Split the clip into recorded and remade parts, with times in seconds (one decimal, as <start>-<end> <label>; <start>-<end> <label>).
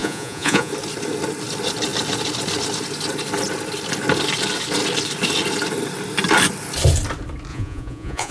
0.0-0.7 remade; 0.7-7.5 recorded; 7.5-8.3 remade